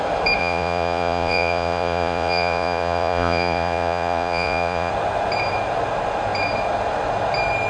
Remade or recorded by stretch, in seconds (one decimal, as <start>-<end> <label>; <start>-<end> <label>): 0.0-0.4 recorded; 0.4-4.9 remade; 4.9-7.7 recorded